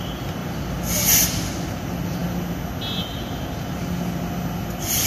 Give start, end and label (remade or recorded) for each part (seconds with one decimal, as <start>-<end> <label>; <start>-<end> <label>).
0.0-5.1 recorded